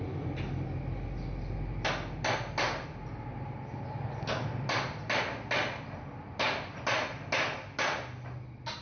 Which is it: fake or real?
real